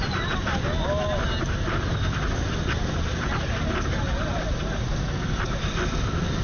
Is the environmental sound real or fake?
real